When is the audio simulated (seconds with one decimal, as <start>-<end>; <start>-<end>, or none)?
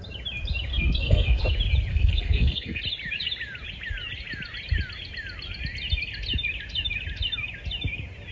0.7-1.4; 1.9-2.8